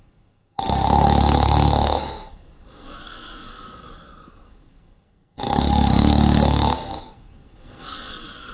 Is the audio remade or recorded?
remade